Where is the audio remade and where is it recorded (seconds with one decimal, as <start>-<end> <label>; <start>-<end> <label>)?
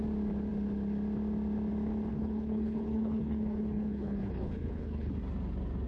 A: 0.0-2.1 recorded; 2.1-5.1 remade; 5.1-5.9 recorded